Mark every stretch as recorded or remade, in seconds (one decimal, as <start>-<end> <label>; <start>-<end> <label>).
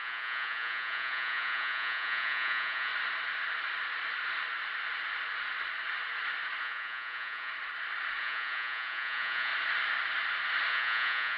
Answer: 0.0-2.9 remade; 2.9-6.6 recorded; 6.6-7.5 remade; 7.5-8.2 recorded; 8.2-9.5 remade; 9.5-10.7 recorded; 10.7-11.4 remade